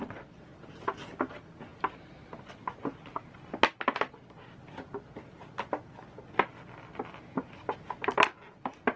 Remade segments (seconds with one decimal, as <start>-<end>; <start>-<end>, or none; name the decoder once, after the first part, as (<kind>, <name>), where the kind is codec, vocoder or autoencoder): none